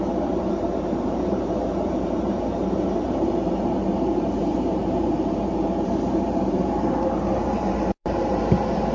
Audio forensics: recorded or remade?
remade